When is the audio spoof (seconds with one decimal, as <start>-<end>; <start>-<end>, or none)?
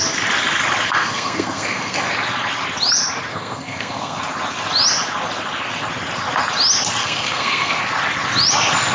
1.0-2.1; 3.3-4.2; 7.0-7.8